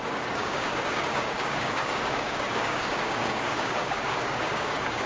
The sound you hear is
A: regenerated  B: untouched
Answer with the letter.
A